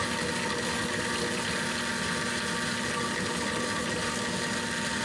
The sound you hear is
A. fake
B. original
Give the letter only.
B